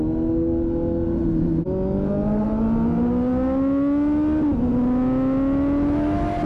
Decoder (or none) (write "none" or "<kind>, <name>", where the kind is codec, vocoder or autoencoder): none